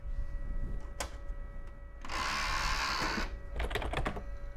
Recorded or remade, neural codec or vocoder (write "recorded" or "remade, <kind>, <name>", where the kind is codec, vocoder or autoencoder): recorded